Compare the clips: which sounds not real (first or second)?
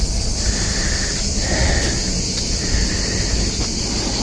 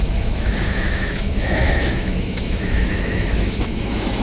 second